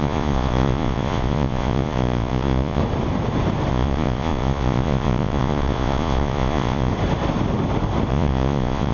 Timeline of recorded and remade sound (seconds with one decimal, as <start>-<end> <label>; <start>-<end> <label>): 0.0-2.8 remade; 2.8-3.7 recorded; 3.7-6.9 remade; 6.9-8.1 recorded; 8.1-8.9 remade